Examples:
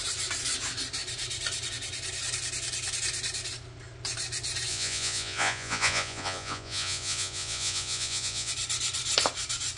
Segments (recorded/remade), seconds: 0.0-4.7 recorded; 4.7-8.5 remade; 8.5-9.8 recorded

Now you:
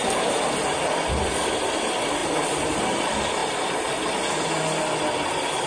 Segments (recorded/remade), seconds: 0.0-2.2 recorded; 2.2-2.8 remade; 2.8-3.4 recorded; 3.4-3.9 remade; 3.9-5.7 recorded